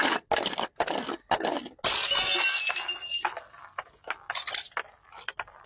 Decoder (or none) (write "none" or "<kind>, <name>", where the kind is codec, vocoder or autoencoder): none